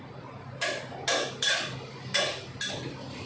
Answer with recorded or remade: recorded